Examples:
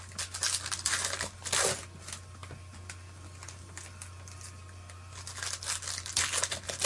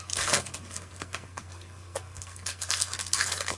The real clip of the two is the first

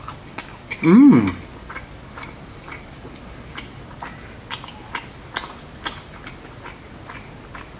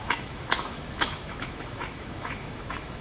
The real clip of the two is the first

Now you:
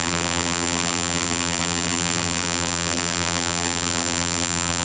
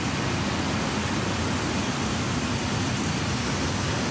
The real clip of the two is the second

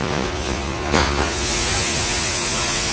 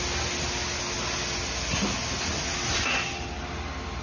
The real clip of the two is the second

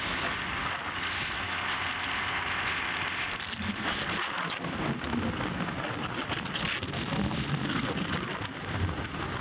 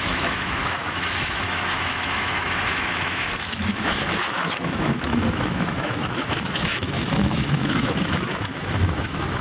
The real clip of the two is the first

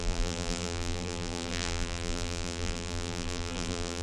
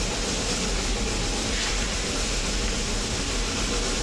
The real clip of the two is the second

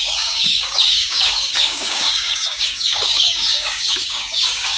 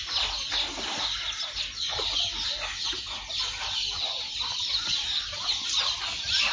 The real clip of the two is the second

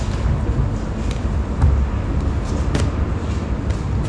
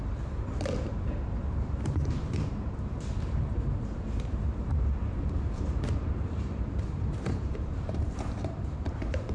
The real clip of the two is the first